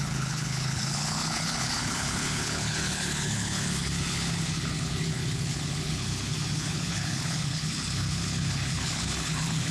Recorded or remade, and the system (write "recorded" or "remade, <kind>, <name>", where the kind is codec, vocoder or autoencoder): remade, codec, HILCodec